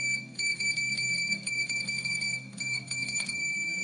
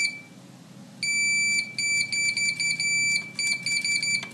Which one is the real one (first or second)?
second